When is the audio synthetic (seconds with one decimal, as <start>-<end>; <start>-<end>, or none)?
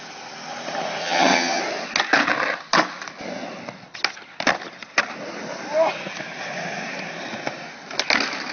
1.0-1.6